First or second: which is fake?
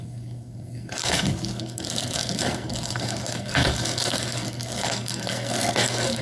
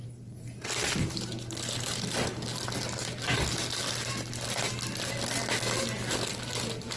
first